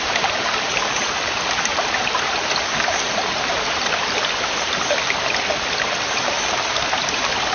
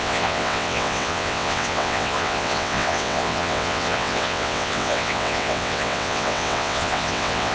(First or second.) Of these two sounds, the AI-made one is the second